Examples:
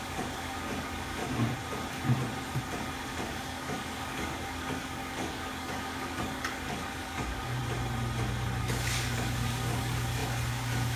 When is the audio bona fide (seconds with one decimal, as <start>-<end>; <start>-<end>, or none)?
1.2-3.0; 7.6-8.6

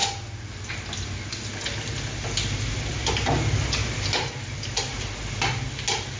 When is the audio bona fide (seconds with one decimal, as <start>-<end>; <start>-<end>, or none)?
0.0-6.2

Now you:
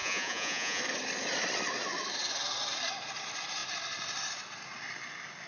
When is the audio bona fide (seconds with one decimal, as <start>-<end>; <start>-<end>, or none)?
0.8-5.5